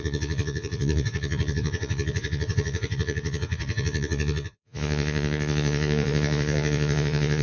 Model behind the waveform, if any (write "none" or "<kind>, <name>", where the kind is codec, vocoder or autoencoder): vocoder, Vocos